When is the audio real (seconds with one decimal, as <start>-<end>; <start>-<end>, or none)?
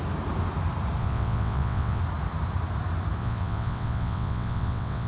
0.0-1.0; 2.0-3.2